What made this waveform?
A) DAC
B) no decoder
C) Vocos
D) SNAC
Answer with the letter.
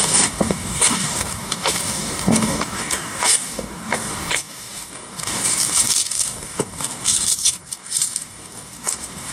A